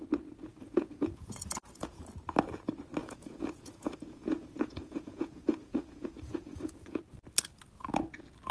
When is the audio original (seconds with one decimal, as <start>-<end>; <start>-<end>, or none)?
0.0-0.5; 2.0-3.0; 7.0-8.5